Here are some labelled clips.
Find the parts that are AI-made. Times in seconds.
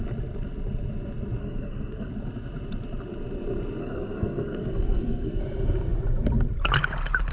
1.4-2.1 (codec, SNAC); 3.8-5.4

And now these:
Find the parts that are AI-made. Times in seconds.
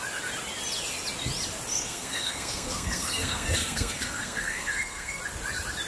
1.7-5.2 (codec, SNAC)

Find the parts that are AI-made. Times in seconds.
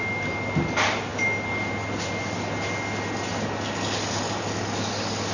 none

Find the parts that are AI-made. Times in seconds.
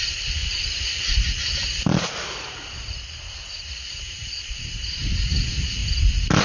0.0-5.8 (vocoder, BigVGAN v2)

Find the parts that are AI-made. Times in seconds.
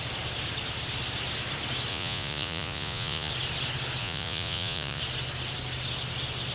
1.9-3.3 (vocoder, Vocos); 4.0-5.0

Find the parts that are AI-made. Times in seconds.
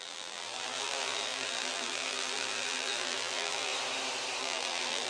0.0-3.7 (vocoder, BigVGAN v2); 4.4-5.1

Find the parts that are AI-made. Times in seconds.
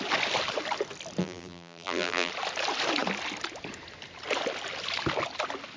1.2-2.3 (vocoder, BigVGAN v2)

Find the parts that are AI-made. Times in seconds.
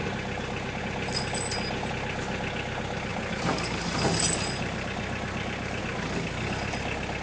3.1-5.8 (vocoder, BigVGAN v2)